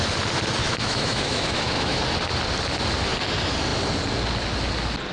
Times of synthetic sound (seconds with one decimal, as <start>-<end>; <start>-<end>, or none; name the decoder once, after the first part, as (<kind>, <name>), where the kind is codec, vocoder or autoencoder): 0.6-2.0 (autoencoder, DAC-VAE)